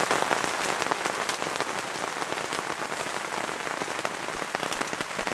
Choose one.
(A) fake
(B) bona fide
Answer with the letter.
B